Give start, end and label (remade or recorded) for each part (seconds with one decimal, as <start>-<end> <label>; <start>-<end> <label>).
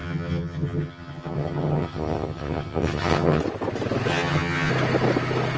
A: 0.0-3.4 remade; 3.4-4.1 recorded; 4.1-4.7 remade; 4.7-5.6 recorded